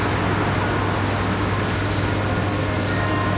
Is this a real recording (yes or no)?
yes